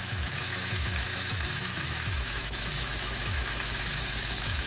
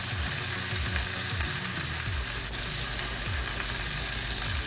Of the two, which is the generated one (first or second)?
first